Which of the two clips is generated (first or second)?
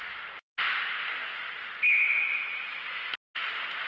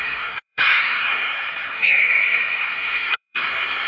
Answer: second